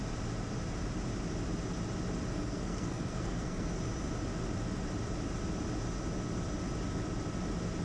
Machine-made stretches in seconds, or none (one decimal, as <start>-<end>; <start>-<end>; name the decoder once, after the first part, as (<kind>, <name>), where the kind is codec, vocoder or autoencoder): 2.3-3.8 (codec, SNAC)